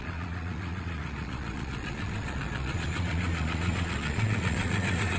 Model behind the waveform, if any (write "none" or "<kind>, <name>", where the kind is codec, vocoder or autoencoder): vocoder, Vocos